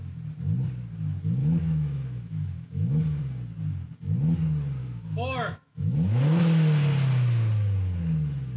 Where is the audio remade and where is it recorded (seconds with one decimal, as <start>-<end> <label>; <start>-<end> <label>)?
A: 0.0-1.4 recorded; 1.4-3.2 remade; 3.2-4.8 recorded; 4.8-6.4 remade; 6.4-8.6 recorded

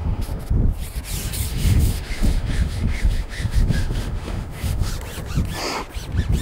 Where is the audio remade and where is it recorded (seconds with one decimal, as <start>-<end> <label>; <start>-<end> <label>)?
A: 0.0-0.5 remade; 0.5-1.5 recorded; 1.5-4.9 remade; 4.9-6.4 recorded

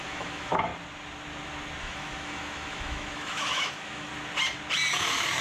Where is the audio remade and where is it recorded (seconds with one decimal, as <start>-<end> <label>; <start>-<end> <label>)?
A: 0.0-0.7 remade; 0.7-1.8 recorded; 1.8-4.1 remade; 4.1-4.9 recorded; 4.9-5.4 remade

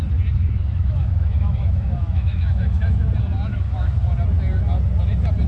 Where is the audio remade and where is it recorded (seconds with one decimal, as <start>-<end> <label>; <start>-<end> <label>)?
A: 0.0-0.4 recorded; 0.4-3.1 remade; 3.1-3.5 recorded; 3.5-4.0 remade; 4.0-5.5 recorded